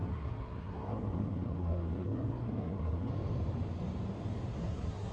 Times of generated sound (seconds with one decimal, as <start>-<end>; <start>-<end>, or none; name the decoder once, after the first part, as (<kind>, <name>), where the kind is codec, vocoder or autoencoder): 0.0-3.1 (codec, SNAC); 4.6-5.1